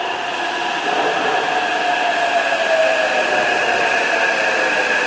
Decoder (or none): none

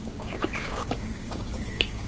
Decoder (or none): codec, DAC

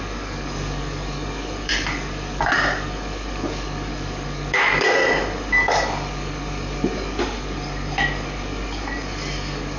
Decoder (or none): codec, DAC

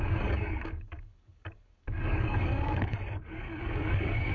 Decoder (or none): codec, DAC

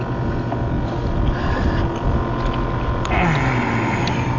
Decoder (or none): none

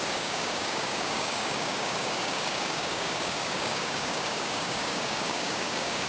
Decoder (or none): codec, DAC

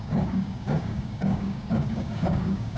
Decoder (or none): codec, DAC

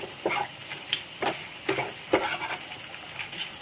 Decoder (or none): none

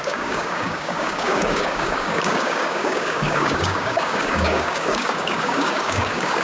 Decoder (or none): codec, DAC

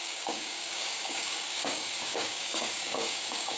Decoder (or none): codec, DAC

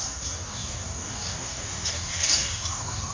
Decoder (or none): codec, DAC